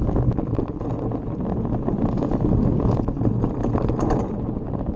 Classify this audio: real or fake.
real